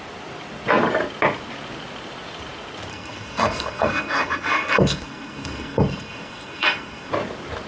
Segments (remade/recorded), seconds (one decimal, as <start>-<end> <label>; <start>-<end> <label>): 0.0-2.9 recorded; 2.9-7.1 remade; 7.1-7.7 recorded